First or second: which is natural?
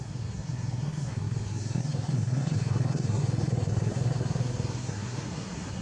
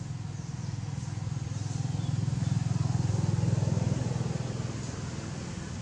second